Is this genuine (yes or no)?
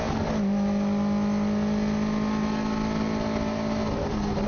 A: yes